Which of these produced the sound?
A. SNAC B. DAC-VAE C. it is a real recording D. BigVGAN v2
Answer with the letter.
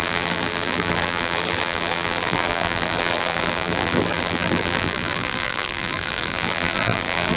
D